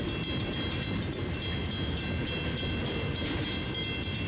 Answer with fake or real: real